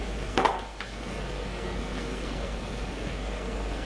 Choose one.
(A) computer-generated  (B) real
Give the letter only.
A